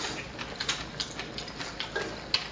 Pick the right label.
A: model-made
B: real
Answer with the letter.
B